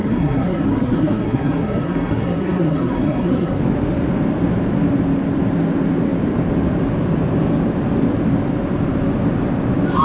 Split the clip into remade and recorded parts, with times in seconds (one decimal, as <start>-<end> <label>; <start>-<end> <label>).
0.0-3.6 remade; 3.6-10.0 recorded